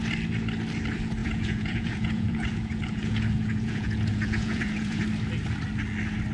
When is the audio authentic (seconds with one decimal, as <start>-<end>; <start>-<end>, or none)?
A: 0.0-1.2; 5.0-6.3